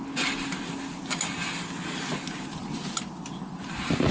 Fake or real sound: real